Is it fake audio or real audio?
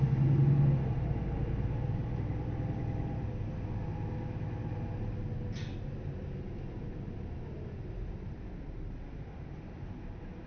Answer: real